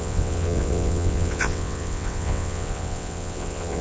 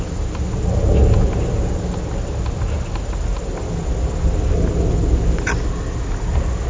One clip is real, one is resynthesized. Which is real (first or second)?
second